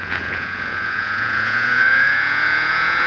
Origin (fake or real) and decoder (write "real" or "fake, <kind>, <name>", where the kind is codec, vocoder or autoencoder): fake, vocoder, Vocos